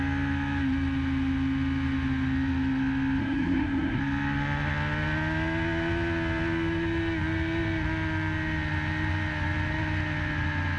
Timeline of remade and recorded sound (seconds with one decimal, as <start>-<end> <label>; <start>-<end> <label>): 0.0-3.2 recorded; 3.2-4.0 remade; 4.0-10.8 recorded